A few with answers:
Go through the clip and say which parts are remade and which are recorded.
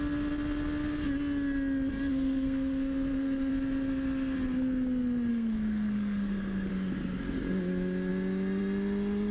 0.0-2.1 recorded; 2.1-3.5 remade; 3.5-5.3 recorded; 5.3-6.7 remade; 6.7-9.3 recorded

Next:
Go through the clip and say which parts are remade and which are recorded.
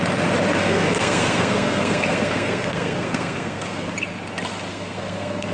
0.0-0.6 recorded; 0.6-3.9 remade; 3.9-4.7 recorded; 4.7-5.5 remade